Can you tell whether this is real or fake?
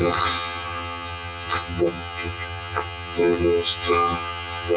fake